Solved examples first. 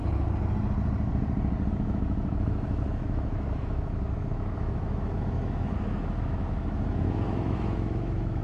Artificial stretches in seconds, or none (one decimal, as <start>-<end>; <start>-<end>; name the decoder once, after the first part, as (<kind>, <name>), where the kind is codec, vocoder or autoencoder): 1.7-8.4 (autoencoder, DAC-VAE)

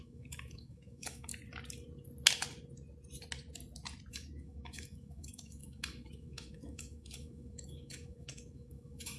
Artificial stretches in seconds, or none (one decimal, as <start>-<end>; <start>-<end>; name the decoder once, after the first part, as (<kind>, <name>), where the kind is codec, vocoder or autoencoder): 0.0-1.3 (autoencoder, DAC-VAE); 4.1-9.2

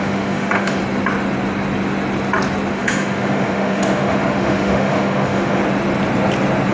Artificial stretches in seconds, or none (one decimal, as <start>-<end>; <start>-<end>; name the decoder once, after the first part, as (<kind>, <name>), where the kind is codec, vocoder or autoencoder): 0.0-0.8 (autoencoder, DAC-VAE); 2.7-5.6